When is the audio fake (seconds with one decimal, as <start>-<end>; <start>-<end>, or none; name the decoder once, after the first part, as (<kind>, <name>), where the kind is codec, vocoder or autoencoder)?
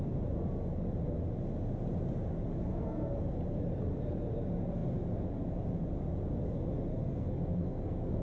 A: 2.5-3.2 (codec, SNAC); 6.9-8.2